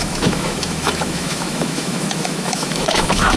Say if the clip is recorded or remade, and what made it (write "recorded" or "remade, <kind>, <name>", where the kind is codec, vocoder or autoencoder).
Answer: remade, autoencoder, DAC-VAE